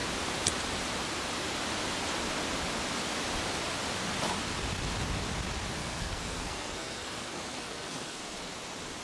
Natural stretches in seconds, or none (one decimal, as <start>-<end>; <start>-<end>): 0.0-5.8; 8.5-9.0